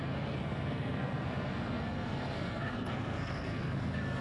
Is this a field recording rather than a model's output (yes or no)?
no